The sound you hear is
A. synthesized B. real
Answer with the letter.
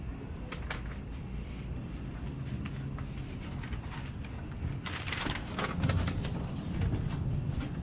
B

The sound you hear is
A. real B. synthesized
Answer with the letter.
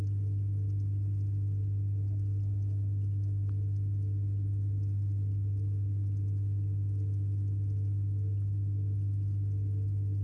A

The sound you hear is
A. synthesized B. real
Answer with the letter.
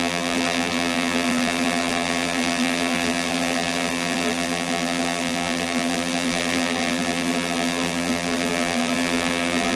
A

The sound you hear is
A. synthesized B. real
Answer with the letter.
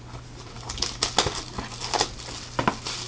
B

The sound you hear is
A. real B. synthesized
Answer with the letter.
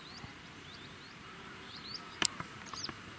B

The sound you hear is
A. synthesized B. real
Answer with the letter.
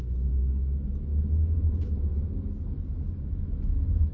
B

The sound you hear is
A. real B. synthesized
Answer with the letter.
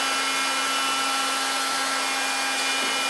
A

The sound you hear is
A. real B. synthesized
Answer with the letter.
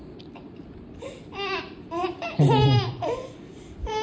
B